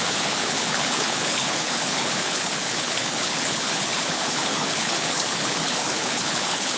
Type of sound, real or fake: fake